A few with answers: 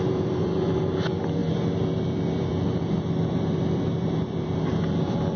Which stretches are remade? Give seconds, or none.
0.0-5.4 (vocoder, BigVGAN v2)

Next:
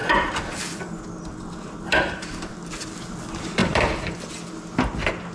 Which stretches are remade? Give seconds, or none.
0.0-0.6 (vocoder, BigVGAN v2); 1.9-2.5; 3.6-4.6

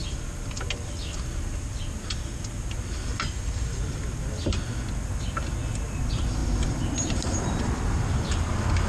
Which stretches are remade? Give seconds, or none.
3.1-3.8 (vocoder, BigVGAN v2)

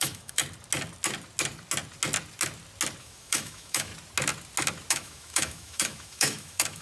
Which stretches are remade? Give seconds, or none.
0.0-0.4 (autoencoder, DAC-VAE); 3.0-3.9; 4.9-6.8

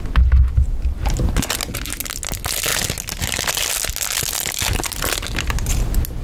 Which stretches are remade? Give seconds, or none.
none